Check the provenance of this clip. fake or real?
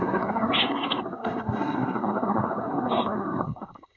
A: fake